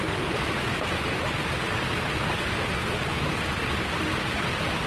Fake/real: real